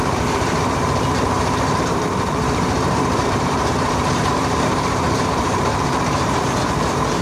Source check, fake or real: fake